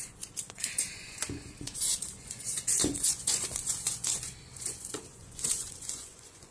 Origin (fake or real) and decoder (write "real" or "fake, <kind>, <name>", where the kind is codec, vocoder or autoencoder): fake, vocoder, Vocos